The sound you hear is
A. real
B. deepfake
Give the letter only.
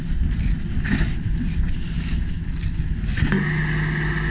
A